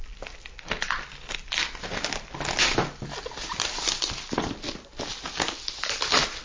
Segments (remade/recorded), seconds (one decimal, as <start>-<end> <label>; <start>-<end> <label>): 0.0-6.4 recorded